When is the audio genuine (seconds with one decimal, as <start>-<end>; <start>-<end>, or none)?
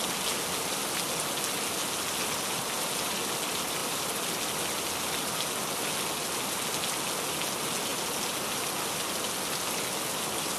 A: 0.0-10.6